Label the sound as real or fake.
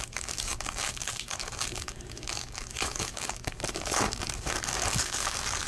fake